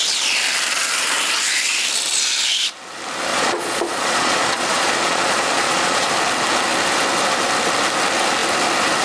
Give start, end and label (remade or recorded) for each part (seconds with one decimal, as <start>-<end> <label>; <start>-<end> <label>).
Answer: 0.0-3.3 recorded; 3.3-6.1 remade; 6.1-9.0 recorded